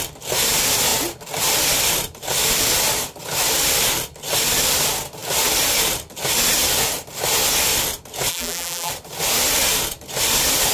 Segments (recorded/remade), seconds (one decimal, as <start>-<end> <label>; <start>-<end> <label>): 0.0-8.3 recorded; 8.3-8.9 remade; 8.9-10.7 recorded